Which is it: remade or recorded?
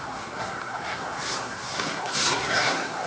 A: remade